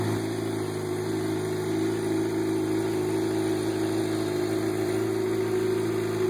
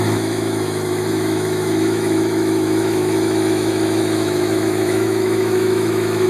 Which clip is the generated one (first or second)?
second